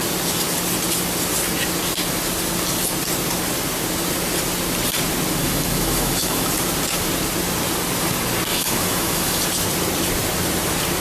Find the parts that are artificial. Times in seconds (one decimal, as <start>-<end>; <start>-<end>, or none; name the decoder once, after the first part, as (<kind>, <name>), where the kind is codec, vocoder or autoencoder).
5.4-6.5 (autoencoder, DAC-VAE); 8.5-9.4